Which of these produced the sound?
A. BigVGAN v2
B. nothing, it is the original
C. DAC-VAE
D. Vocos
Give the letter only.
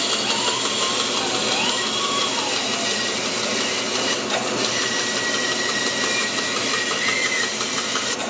B